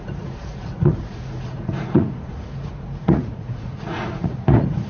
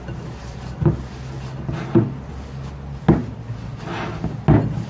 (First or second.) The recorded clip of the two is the second